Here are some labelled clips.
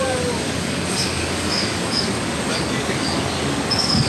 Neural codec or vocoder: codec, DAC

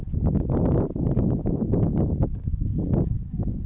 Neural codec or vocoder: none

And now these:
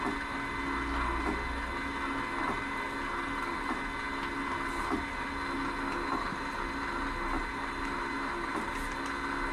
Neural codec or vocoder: none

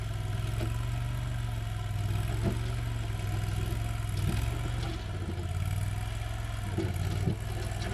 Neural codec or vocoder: none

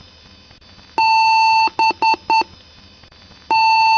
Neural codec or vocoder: none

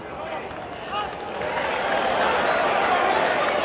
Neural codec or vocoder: none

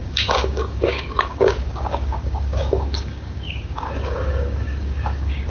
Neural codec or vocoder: codec, DAC